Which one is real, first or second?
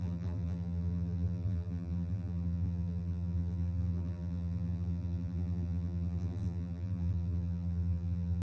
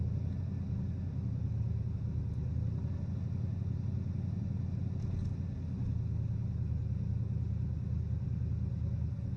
second